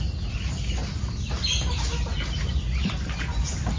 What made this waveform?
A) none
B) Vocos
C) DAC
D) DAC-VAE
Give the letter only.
A